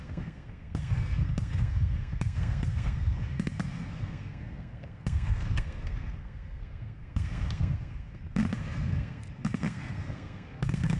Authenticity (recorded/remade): remade